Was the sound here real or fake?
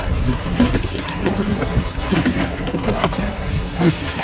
fake